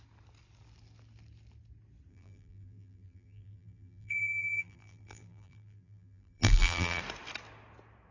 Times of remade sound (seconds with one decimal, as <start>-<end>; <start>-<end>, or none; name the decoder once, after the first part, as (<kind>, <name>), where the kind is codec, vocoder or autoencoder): 2.1-7.0 (vocoder, BigVGAN v2)